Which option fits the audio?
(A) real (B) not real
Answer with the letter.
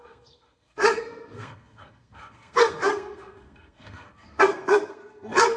B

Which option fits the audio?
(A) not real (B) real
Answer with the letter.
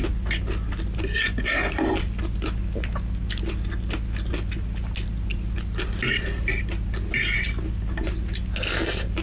B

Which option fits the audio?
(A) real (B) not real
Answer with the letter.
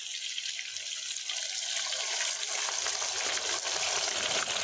A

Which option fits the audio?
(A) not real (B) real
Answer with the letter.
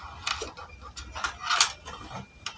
B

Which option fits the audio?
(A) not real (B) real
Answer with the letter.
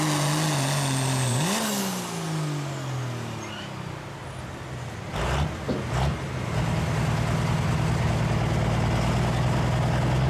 B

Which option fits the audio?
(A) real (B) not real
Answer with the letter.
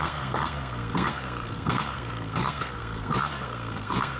B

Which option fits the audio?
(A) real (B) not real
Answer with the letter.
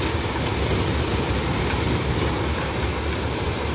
A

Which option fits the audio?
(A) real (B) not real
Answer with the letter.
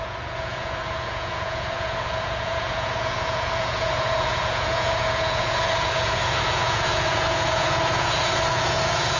B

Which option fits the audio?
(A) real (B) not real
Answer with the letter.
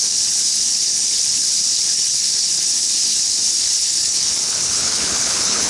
B